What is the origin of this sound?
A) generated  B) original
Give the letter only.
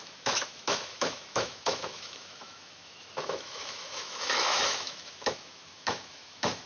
A